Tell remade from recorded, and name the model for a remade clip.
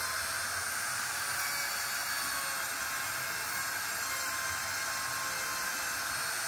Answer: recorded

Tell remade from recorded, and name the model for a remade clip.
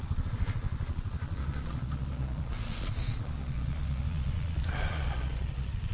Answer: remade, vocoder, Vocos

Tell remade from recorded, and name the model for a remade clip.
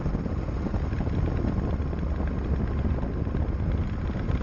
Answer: recorded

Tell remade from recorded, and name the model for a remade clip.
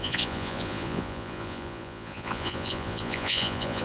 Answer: remade, vocoder, Vocos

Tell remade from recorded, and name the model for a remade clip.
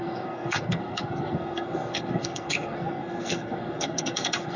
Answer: remade, codec, SNAC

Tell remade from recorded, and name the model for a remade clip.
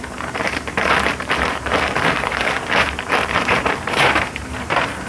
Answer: remade, vocoder, BigVGAN v2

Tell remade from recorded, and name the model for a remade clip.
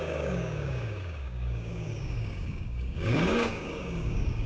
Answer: remade, codec, DAC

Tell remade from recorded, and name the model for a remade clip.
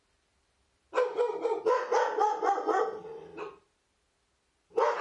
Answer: recorded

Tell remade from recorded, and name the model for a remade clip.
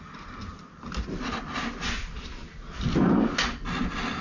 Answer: recorded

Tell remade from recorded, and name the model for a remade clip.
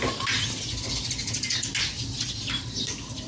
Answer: recorded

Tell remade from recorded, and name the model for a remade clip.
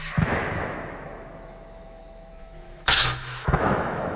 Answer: remade, autoencoder, DAC-VAE